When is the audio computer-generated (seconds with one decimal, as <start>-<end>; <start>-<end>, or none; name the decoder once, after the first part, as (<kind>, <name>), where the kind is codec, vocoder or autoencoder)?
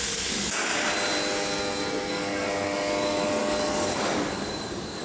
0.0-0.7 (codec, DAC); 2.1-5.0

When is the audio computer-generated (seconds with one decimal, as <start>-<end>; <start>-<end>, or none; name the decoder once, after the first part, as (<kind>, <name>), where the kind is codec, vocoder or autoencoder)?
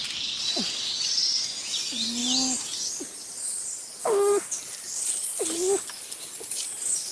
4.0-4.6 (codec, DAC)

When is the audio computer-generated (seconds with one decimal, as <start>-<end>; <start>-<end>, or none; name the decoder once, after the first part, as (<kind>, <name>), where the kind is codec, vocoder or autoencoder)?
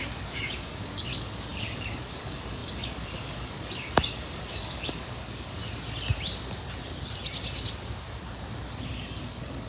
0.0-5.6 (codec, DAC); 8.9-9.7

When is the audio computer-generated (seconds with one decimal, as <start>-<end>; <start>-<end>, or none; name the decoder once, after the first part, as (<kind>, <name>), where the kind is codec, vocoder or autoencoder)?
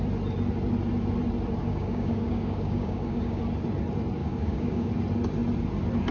1.6-3.4 (codec, DAC); 4.2-4.9